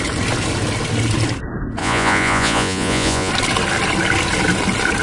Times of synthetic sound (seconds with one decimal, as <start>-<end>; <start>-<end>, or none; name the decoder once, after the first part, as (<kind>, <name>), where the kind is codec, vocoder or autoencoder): 1.8-3.3 (vocoder, Vocos)